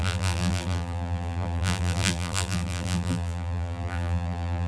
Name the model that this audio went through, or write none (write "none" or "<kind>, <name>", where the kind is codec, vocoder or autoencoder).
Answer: vocoder, BigVGAN v2